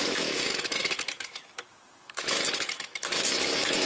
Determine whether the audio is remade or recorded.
remade